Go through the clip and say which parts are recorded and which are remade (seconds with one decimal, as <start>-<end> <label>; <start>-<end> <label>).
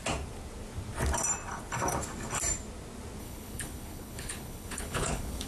0.0-3.2 recorded; 3.2-5.5 remade